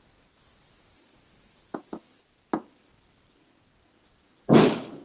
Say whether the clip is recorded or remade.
recorded